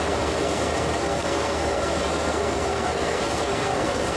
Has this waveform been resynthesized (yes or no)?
yes